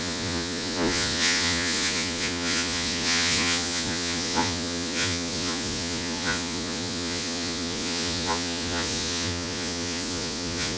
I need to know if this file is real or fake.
fake